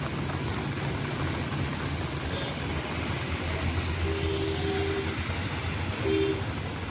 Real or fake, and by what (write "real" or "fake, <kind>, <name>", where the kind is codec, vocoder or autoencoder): real